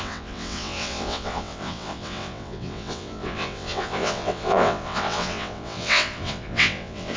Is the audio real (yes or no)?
no